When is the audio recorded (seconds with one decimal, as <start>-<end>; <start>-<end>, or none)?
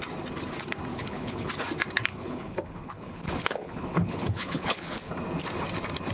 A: 0.0-0.9; 1.5-2.1; 5.1-6.1